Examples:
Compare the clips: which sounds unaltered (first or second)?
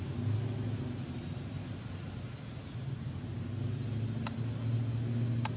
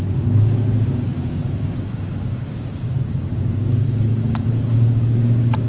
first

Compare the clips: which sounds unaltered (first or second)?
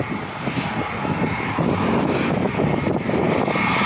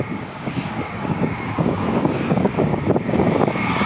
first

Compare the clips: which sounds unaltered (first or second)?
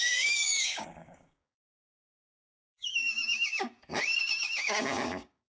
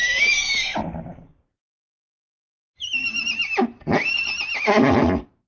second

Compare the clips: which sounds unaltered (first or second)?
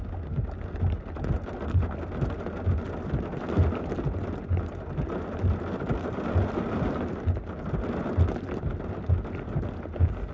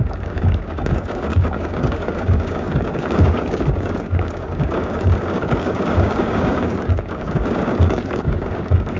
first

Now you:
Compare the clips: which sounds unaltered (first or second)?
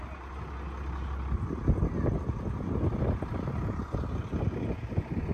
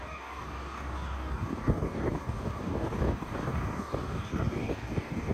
first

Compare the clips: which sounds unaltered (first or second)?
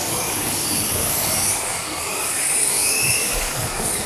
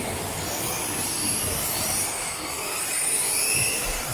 second